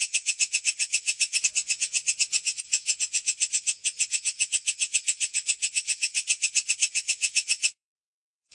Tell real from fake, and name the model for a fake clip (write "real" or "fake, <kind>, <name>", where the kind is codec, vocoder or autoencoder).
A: fake, vocoder, Vocos